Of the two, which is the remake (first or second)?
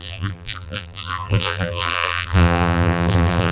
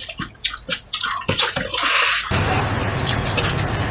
first